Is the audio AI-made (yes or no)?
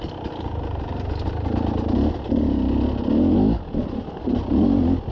no